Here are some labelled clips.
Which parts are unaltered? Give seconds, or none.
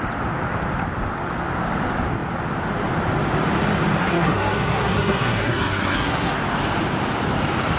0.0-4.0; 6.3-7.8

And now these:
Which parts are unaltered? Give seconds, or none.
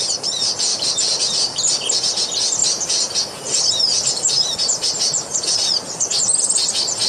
0.0-0.7; 1.3-2.6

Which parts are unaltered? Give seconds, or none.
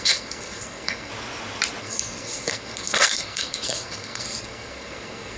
1.1-1.8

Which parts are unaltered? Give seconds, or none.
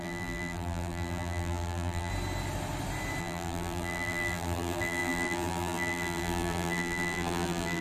2.1-3.2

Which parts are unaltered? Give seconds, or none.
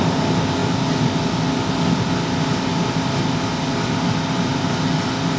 0.0-5.4